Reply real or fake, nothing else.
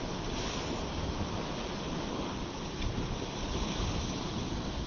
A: real